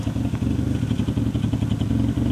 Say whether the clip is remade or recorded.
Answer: recorded